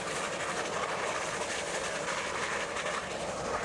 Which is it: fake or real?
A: real